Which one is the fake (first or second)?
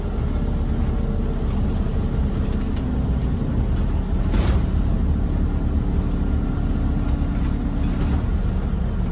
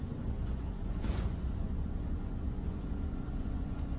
second